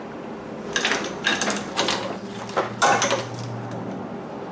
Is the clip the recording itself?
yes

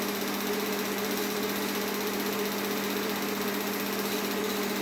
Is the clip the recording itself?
yes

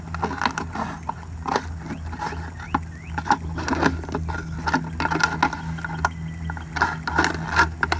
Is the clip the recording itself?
yes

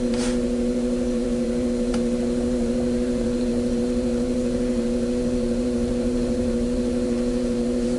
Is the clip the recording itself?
no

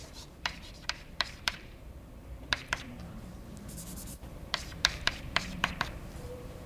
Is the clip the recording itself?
no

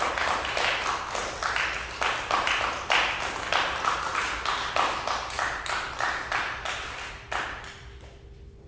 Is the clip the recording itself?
yes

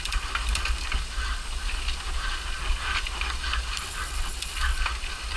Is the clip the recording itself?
yes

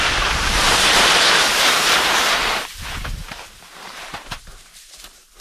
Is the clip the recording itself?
no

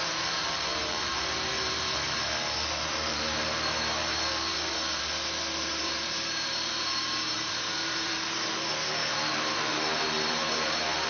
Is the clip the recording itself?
no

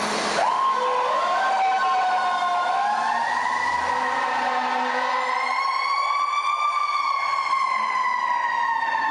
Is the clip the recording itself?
yes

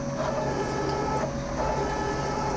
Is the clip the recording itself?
yes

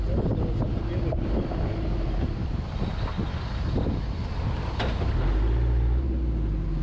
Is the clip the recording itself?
yes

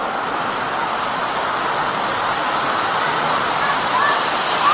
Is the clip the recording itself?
yes